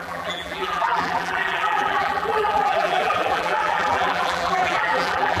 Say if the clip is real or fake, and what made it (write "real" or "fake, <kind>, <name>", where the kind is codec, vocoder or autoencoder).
fake, vocoder, BigVGAN v2